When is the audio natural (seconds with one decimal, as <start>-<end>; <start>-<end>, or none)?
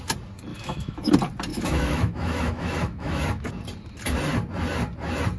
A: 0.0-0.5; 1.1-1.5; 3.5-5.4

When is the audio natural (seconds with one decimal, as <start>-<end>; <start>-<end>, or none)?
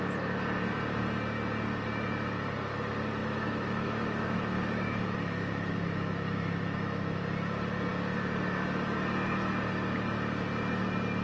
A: 0.0-3.2; 7.2-11.2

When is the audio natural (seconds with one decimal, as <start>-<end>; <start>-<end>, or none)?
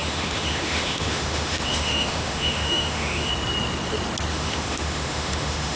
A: 3.3-4.3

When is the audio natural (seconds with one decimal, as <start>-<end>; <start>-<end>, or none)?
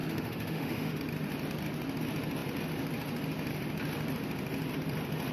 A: 1.0-5.3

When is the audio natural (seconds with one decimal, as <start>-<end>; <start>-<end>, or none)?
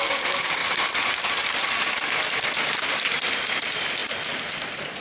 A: 0.0-5.0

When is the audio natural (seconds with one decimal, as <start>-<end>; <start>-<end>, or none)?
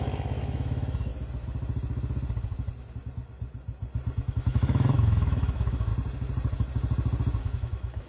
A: 1.1-4.3; 5.9-7.4